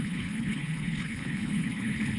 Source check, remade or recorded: remade